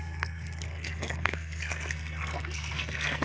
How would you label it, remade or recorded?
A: remade